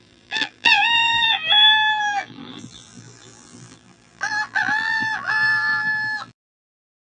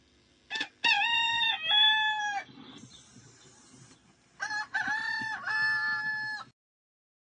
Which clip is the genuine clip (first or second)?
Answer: second